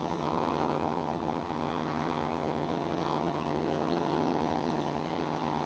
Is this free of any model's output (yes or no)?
no